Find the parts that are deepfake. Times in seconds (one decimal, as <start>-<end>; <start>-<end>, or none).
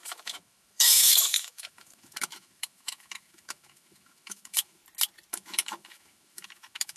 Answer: 0.0-4.8; 5.3-7.0